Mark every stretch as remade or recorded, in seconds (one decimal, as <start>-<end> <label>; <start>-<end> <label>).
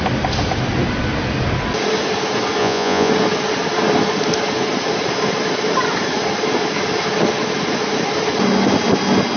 0.0-2.6 recorded; 2.6-3.1 remade; 3.1-9.4 recorded